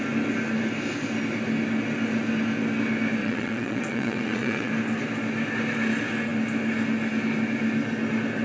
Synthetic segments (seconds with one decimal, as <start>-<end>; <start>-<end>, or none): 3.2-4.7